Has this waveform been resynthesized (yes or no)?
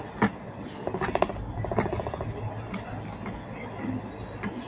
no